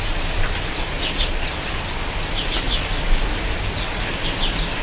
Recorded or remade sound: recorded